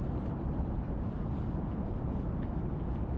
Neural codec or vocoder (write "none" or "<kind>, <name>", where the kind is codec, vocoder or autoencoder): none